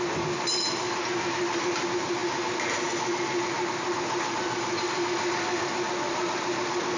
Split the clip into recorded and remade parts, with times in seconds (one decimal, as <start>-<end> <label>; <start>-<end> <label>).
0.0-7.0 recorded

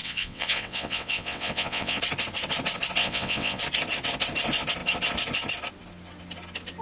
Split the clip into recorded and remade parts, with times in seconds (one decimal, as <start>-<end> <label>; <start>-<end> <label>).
0.0-2.0 remade; 2.0-3.0 recorded; 3.0-3.6 remade; 3.6-6.8 recorded

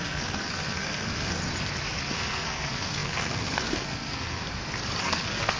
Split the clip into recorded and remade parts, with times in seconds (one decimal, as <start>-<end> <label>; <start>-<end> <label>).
0.0-1.4 remade; 1.4-2.0 recorded; 2.0-4.4 remade; 4.4-5.0 recorded; 5.0-5.6 remade

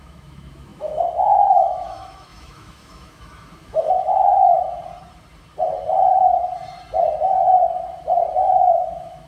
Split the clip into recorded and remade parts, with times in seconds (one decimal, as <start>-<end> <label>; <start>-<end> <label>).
0.0-4.5 remade; 4.5-8.5 recorded; 8.5-9.3 remade

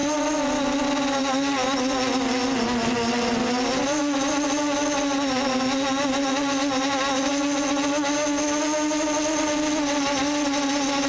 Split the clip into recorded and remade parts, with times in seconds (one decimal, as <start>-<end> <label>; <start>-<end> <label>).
0.0-11.1 recorded

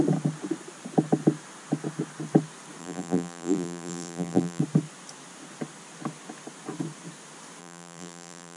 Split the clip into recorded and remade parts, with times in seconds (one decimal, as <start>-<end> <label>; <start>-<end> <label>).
0.0-2.8 recorded; 2.8-4.6 remade; 4.6-7.6 recorded; 7.6-8.6 remade